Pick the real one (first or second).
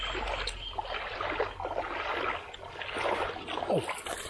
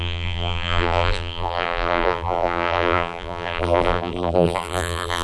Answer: first